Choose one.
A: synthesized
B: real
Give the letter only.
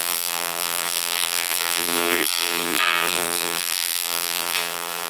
A